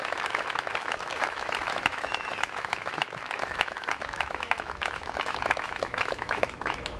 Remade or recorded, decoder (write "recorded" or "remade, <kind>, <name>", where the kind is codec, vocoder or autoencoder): remade, autoencoder, DAC-VAE